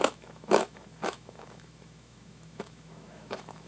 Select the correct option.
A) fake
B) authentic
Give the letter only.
A